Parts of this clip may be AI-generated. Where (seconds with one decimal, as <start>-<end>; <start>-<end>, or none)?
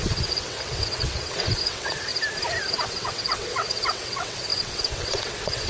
0.0-2.1; 2.7-5.7